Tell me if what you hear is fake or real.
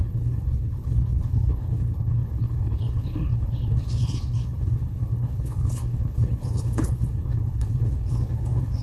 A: fake